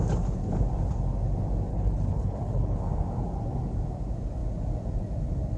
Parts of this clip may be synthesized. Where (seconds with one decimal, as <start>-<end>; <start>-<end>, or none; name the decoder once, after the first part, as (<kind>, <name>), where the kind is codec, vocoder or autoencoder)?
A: 1.7-2.8 (codec, HILCodec)